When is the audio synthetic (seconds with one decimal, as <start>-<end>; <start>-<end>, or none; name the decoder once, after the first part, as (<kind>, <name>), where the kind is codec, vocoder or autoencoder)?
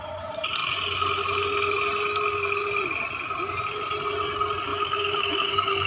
4.7-5.9 (autoencoder, DAC-VAE)